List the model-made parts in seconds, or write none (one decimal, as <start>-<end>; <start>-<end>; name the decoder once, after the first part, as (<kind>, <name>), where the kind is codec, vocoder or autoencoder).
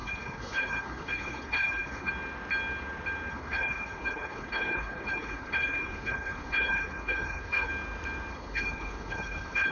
0.0-2.1 (codec, HILCodec); 3.3-7.7; 8.3-9.7